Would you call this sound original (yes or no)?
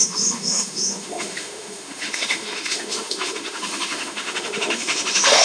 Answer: no